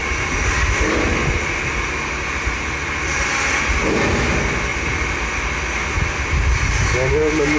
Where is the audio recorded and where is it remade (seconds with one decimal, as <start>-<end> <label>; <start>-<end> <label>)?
0.0-7.6 recorded